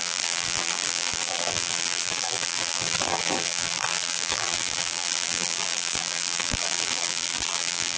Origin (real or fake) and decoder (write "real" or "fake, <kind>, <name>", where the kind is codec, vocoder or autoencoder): fake, vocoder, BigVGAN v2